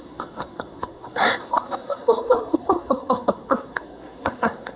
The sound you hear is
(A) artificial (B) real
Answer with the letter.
A